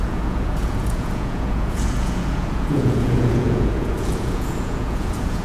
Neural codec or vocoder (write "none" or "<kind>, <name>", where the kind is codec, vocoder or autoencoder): vocoder, Vocos